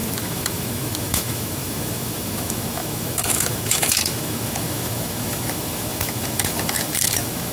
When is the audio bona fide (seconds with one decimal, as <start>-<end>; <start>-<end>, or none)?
none